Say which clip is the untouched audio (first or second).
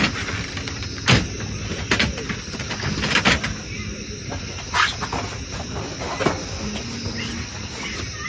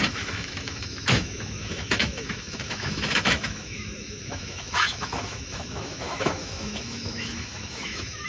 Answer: first